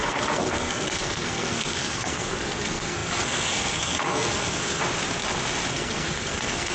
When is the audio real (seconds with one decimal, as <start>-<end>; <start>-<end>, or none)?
4.8-5.7